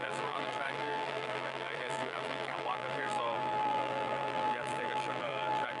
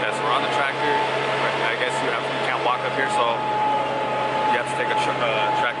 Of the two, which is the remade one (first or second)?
first